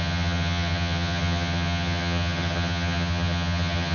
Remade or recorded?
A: remade